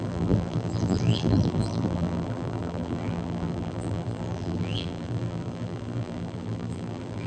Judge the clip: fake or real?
fake